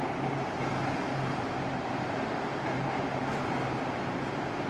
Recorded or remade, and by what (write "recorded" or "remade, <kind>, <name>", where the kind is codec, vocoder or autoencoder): remade, vocoder, BigVGAN v2